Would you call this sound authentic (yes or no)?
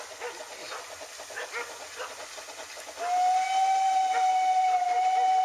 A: yes